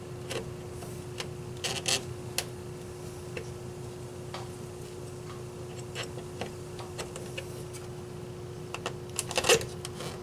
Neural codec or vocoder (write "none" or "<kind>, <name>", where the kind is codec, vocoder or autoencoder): none